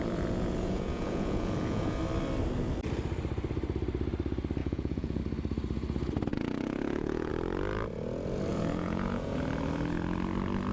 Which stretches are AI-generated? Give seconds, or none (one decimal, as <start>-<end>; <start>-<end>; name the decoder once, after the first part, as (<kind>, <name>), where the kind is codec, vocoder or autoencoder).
0.0-2.0 (vocoder, Vocos); 4.6-5.2; 6.3-7.3; 8.5-9.4